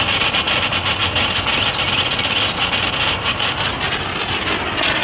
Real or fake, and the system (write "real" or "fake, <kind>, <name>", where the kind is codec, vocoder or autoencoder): real